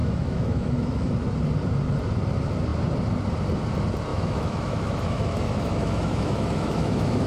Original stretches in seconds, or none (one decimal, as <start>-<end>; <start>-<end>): 1.1-4.1